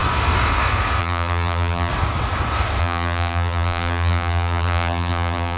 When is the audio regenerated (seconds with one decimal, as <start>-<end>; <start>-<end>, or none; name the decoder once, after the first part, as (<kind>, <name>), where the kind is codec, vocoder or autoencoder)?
1.0-1.9 (vocoder, BigVGAN v2); 2.8-5.6